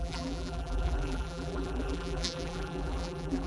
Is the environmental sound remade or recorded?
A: remade